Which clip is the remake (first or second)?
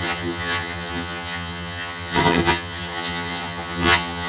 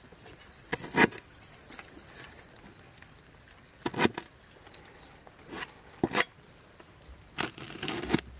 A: first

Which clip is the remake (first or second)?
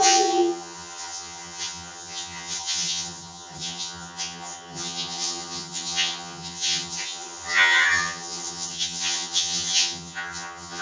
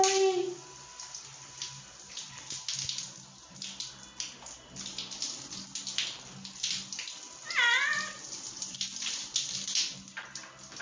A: first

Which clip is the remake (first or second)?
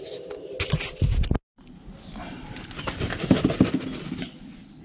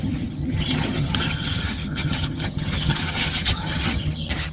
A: second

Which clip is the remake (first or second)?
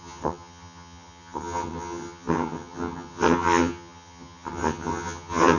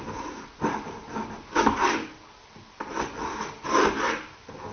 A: first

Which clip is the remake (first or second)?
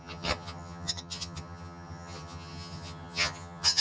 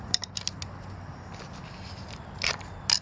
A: first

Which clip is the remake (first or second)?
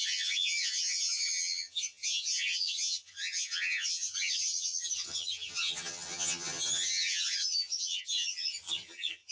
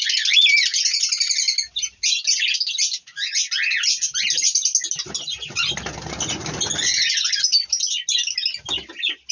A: first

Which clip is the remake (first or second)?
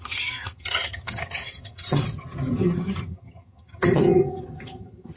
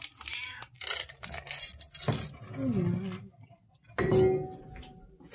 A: first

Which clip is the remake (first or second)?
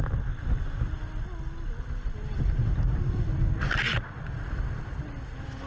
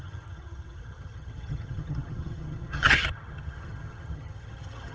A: second